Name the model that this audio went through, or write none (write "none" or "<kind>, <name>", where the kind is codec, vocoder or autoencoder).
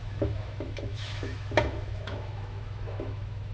autoencoder, DAC-VAE